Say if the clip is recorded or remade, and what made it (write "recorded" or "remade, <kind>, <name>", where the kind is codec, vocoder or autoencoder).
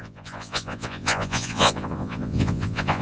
remade, vocoder, Vocos